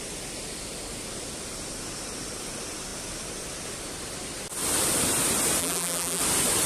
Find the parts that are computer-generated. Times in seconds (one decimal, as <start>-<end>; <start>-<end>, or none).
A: 5.6-6.2